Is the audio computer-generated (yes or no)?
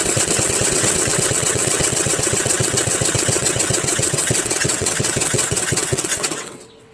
yes